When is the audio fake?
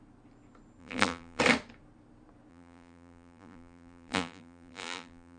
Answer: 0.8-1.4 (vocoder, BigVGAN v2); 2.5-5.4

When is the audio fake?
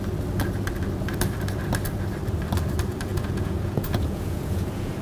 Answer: 3.1-5.0 (vocoder, Vocos)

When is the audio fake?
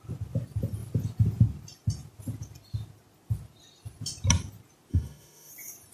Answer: 4.9-5.5 (autoencoder, DAC-VAE)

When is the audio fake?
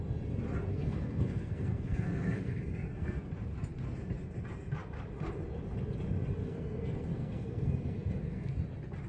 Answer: 0.7-3.3 (codec, SNAC); 6.4-8.6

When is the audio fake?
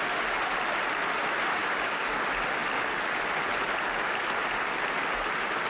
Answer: 1.6-2.2 (codec, DAC)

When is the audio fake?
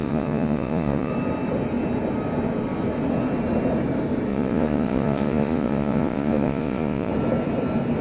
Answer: 0.0-1.1 (vocoder, Vocos); 4.3-7.1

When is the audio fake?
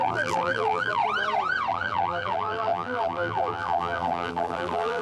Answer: 0.0-1.0 (vocoder, BigVGAN v2); 1.7-5.0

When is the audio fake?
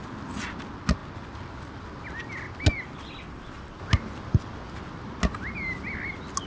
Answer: none